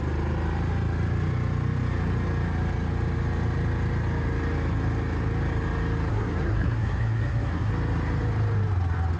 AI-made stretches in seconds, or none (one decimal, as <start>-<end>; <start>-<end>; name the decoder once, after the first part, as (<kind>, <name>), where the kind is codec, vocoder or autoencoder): 6.1-7.7 (codec, SNAC)